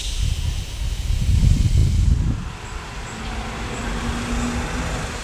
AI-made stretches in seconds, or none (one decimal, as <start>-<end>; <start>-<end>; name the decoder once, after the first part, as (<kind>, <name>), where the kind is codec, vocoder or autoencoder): none

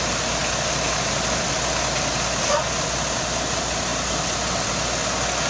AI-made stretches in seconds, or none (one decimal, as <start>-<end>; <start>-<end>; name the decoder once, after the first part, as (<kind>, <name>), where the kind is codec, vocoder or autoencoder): none

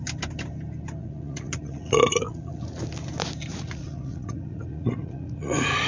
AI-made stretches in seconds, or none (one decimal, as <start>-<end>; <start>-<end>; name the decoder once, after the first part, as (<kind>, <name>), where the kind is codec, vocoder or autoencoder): 1.0-2.8 (vocoder, Vocos); 3.5-5.9

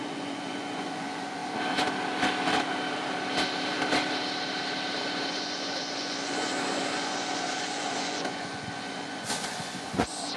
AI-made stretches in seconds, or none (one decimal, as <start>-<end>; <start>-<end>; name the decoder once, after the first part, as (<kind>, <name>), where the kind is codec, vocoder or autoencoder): 0.0-1.4 (vocoder, Vocos); 5.0-10.4